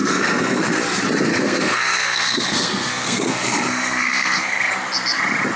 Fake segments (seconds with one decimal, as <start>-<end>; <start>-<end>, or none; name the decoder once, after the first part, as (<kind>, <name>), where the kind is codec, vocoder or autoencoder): 0.0-0.8 (codec, SNAC); 1.3-4.6